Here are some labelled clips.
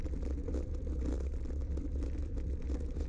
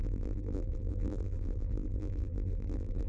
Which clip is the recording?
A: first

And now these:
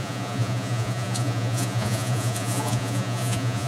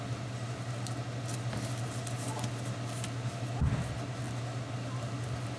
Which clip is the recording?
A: second